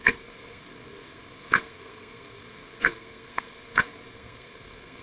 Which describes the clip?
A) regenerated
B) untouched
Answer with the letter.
A